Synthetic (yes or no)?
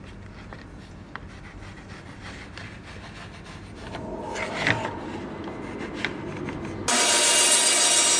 no